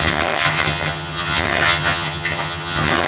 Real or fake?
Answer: fake